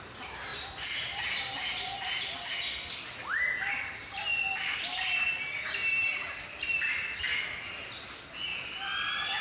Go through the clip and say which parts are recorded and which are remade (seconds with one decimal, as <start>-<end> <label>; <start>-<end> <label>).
0.0-0.5 recorded; 0.5-1.4 remade; 1.4-9.4 recorded